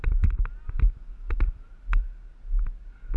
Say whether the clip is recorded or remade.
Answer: recorded